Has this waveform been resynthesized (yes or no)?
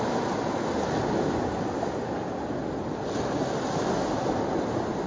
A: no